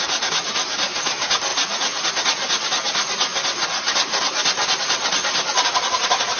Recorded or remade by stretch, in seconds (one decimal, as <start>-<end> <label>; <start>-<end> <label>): 0.0-1.5 recorded; 1.5-2.1 remade; 2.1-6.4 recorded

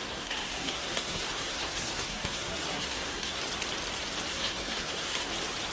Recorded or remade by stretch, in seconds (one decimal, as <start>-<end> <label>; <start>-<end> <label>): 0.0-3.4 remade; 3.4-4.3 recorded; 4.3-5.3 remade; 5.3-5.7 recorded

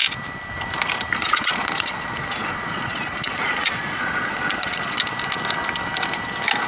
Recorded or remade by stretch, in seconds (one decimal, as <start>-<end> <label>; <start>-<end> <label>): 0.0-1.2 recorded; 1.2-5.0 remade; 5.0-6.7 recorded

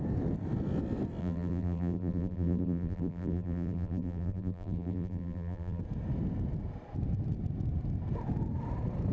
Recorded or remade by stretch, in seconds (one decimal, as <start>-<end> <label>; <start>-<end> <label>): 0.0-1.2 recorded; 1.2-5.8 remade; 5.8-9.1 recorded

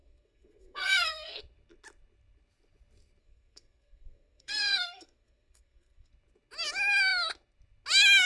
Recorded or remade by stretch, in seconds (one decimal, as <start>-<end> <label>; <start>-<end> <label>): 0.0-1.4 remade; 1.4-3.2 recorded; 3.2-6.1 remade; 6.1-8.3 recorded